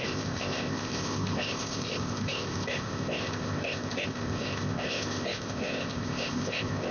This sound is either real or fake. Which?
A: fake